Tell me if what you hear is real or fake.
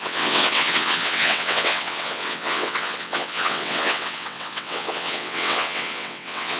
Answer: fake